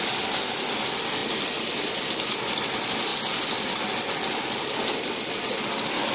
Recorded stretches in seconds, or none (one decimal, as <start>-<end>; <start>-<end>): 0.0-3.1; 5.4-6.1